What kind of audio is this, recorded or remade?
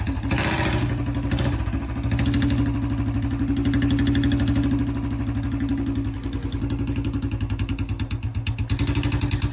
recorded